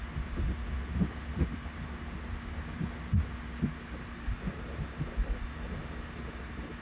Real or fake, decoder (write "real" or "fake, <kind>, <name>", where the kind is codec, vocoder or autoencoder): real